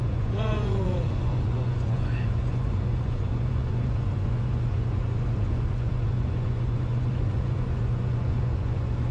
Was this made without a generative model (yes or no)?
no